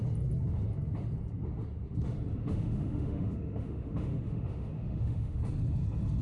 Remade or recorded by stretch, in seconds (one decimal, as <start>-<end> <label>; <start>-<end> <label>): 0.0-2.4 recorded; 2.4-5.4 remade; 5.4-6.2 recorded